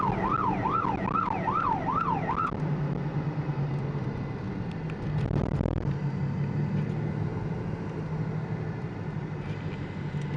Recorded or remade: recorded